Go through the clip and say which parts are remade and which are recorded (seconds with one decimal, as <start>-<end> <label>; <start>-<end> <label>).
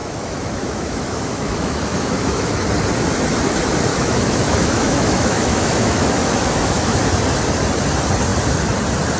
0.0-2.5 remade; 2.5-3.9 recorded; 3.9-7.0 remade; 7.0-9.2 recorded